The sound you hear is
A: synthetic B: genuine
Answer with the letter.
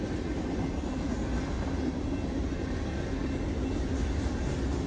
B